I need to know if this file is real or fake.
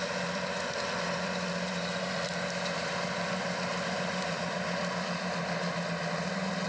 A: fake